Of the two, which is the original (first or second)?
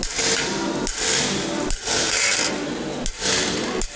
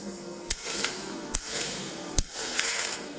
first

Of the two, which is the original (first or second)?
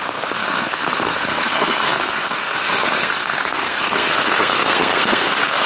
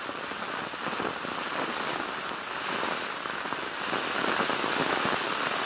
second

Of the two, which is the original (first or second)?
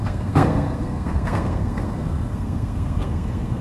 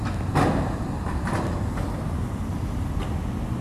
second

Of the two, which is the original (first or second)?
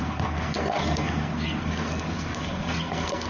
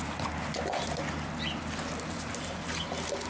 second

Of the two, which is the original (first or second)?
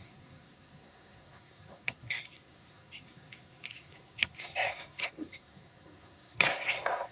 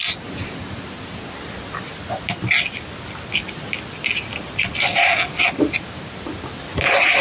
second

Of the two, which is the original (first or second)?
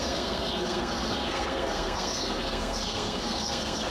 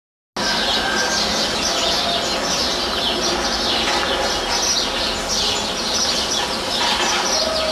second